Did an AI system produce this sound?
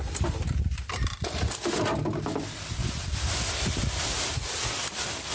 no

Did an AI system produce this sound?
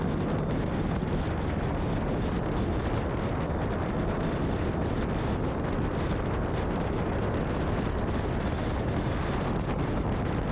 no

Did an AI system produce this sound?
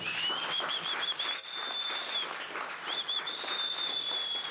no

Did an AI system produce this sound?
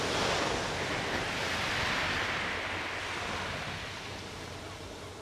no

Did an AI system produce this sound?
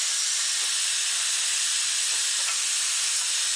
no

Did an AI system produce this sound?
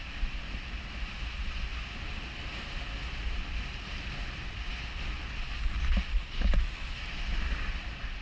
no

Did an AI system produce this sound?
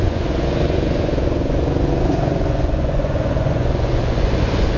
yes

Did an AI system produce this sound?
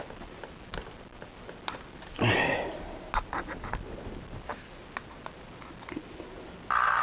no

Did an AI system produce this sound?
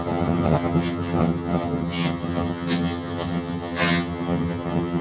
yes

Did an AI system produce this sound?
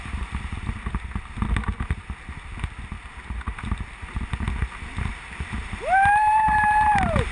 no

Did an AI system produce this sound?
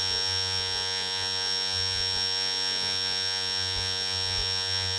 yes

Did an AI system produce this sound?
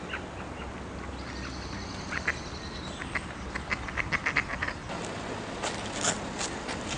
no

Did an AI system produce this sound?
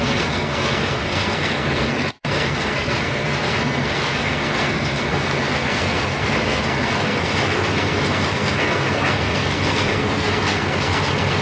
yes